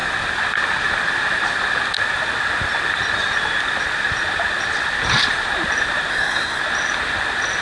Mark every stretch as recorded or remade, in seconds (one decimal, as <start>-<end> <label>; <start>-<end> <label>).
0.0-6.1 recorded; 6.1-6.6 remade; 6.6-7.6 recorded